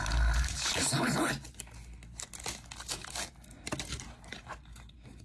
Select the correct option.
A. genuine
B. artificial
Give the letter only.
A